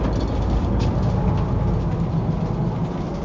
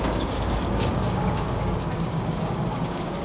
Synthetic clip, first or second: second